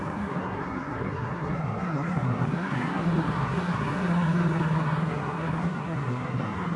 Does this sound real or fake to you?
fake